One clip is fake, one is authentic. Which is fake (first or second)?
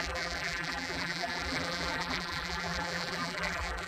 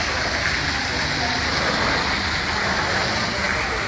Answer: first